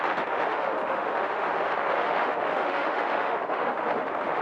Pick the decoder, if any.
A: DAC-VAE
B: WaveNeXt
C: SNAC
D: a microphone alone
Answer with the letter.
A